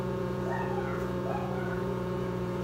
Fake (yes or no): yes